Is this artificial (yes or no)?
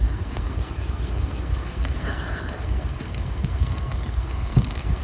yes